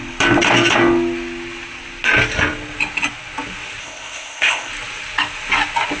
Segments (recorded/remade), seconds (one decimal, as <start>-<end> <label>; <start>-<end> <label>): 0.0-3.8 recorded; 3.8-4.7 remade; 4.7-6.0 recorded

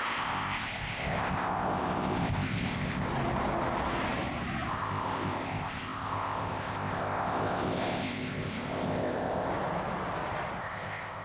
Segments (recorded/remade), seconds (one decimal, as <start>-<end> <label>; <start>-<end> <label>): 0.0-3.1 remade; 3.1-4.7 recorded; 4.7-9.5 remade; 9.5-10.6 recorded; 10.6-11.2 remade

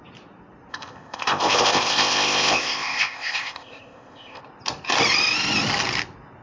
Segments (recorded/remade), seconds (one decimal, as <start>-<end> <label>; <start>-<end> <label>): 0.0-0.7 recorded; 0.7-4.4 remade; 4.4-6.4 recorded

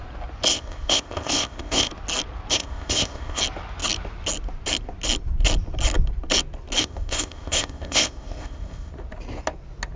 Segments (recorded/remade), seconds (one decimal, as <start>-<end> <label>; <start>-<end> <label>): 0.0-0.5 recorded; 0.5-1.9 remade; 1.9-2.5 recorded; 2.5-3.4 remade; 3.4-6.8 recorded; 6.8-8.9 remade; 8.9-10.0 recorded

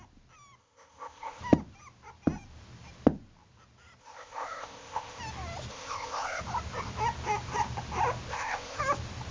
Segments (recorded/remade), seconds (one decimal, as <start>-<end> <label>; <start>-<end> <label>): 0.0-0.6 recorded; 0.6-1.4 remade; 1.4-4.0 recorded; 4.0-5.2 remade; 5.2-5.7 recorded; 5.7-6.4 remade; 6.4-8.3 recorded; 8.3-8.8 remade; 8.8-9.3 recorded

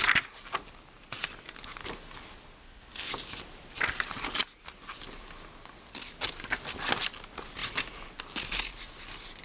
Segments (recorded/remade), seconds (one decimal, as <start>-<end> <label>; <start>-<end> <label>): 0.0-2.6 recorded; 2.6-3.1 remade; 3.1-9.4 recorded